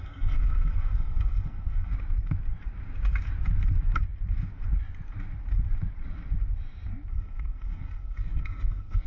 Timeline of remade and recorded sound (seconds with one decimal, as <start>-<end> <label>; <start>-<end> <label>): 0.0-1.9 remade; 1.9-7.1 recorded; 7.1-9.1 remade